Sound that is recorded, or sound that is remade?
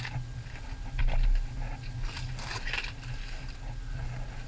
recorded